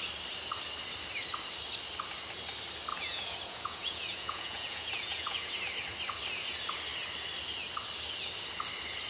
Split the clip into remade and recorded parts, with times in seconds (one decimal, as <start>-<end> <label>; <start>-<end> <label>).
0.0-2.9 recorded; 2.9-5.5 remade; 5.5-9.1 recorded